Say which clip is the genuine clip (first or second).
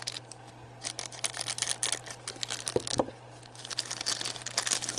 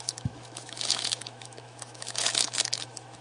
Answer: first